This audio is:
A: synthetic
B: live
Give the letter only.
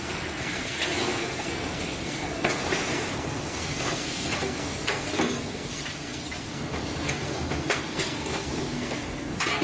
A